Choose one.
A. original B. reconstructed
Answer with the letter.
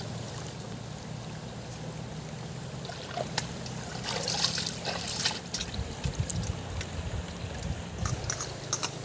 A